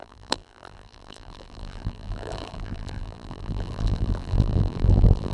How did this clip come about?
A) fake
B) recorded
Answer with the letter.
A